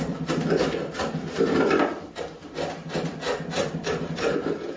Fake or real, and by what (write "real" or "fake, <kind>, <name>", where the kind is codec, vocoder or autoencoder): fake, vocoder, BigVGAN v2